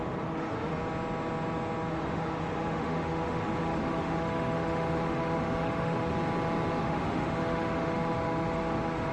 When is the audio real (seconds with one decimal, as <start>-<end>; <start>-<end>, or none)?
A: 0.8-1.9; 6.1-6.8